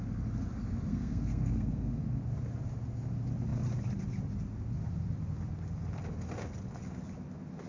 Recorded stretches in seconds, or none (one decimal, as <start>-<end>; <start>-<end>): 0.0-0.9; 2.0-7.7

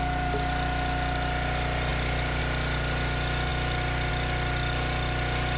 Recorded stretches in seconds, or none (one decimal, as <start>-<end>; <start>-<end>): 0.0-1.9; 2.4-5.6

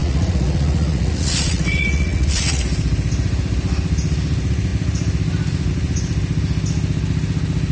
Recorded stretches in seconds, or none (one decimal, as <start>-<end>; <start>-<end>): 2.6-7.7